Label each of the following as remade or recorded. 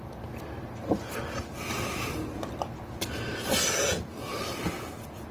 recorded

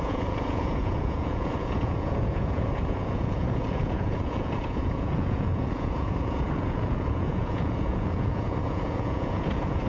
remade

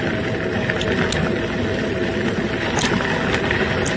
recorded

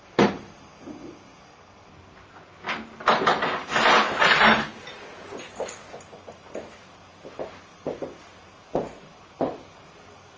recorded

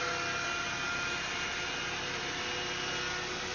recorded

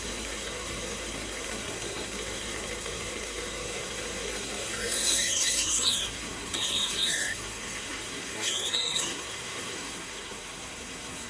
remade